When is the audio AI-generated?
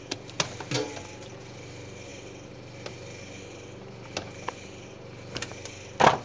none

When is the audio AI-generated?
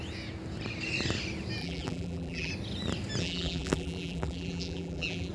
1.6-2.5 (vocoder, BigVGAN v2); 3.2-5.3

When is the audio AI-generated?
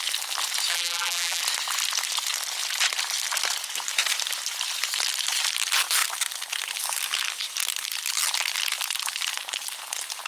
0.7-1.4 (vocoder, BigVGAN v2)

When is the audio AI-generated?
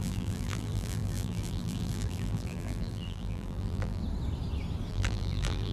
0.0-4.0 (vocoder, BigVGAN v2); 4.9-5.7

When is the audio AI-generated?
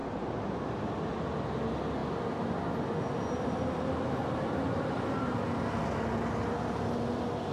0.0-1.0 (vocoder, BigVGAN v2)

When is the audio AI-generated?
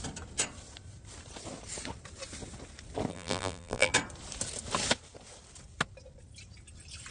3.1-3.9 (vocoder, BigVGAN v2)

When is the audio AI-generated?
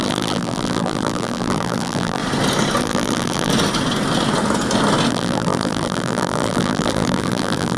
0.0-2.2 (vocoder, BigVGAN v2); 2.8-3.5; 5.1-7.8